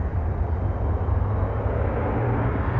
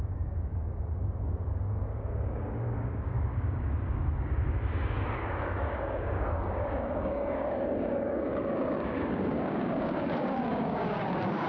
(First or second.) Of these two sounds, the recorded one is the first